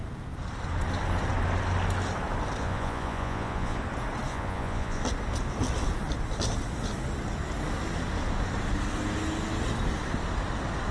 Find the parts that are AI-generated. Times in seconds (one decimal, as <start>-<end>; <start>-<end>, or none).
2.6-3.8; 4.3-5.0